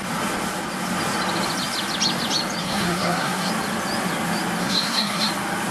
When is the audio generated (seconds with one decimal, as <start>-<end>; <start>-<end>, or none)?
2.6-3.5; 4.6-5.3